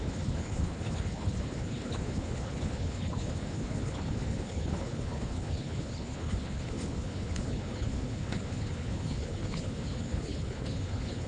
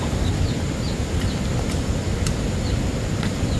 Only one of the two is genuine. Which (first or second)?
second